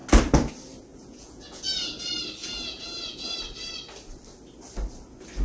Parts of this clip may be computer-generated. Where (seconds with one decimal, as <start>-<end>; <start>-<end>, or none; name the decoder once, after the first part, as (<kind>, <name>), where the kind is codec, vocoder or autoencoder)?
0.9-2.0 (vocoder, Vocos); 2.4-3.3